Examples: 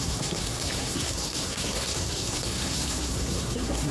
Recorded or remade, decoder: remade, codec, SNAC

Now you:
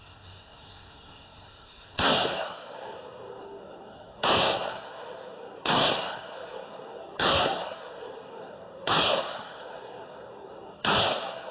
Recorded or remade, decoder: remade, codec, SNAC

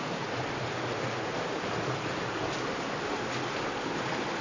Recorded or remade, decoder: recorded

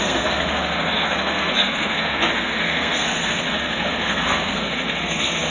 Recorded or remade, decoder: remade, codec, SNAC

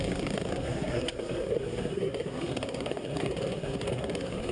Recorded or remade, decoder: remade, codec, SNAC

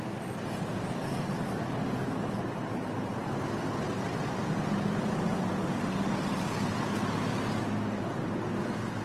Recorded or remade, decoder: recorded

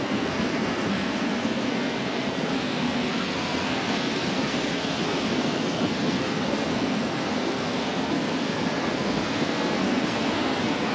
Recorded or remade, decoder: remade, codec, SNAC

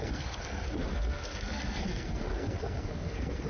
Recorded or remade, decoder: remade, codec, SNAC